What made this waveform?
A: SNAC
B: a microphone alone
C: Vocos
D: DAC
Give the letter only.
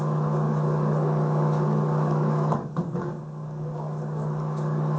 D